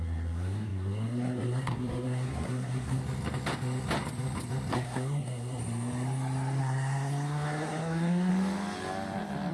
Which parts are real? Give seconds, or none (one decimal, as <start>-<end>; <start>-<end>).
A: 3.0-4.7; 5.6-6.6; 8.3-9.5